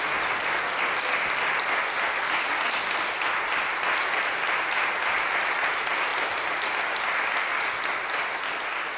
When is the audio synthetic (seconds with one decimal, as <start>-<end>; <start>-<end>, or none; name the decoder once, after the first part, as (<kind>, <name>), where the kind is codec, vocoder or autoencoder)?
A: none